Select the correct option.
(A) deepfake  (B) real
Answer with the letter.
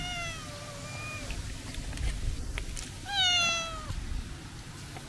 B